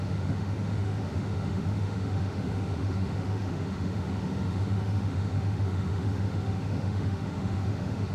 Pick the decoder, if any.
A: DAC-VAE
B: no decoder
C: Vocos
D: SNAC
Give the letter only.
A